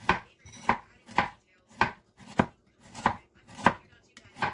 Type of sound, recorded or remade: recorded